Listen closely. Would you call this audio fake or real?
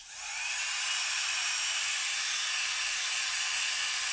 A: real